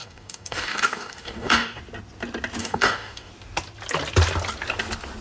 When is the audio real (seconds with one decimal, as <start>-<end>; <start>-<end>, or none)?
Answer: 1.8-2.6; 3.3-5.2